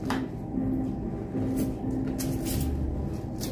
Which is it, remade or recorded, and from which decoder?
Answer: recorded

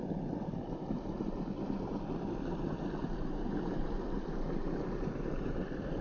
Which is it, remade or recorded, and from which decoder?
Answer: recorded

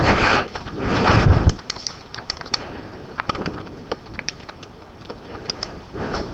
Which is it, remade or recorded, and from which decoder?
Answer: remade, vocoder, BigVGAN v2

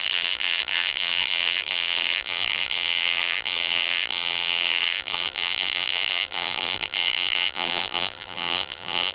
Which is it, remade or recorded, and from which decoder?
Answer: remade, vocoder, BigVGAN v2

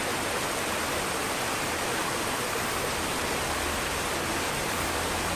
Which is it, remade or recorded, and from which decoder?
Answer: remade, vocoder, BigVGAN v2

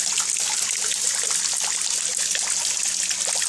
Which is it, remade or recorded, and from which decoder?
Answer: recorded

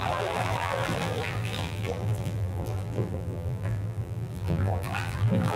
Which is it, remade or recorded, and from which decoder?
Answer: remade, vocoder, BigVGAN v2